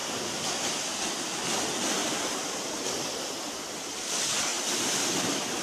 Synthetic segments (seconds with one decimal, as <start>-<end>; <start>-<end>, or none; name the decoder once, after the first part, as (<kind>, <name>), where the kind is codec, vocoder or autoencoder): 2.0-3.5 (vocoder, BigVGAN v2)